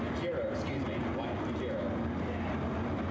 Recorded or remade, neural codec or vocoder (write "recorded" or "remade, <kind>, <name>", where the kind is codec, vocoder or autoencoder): recorded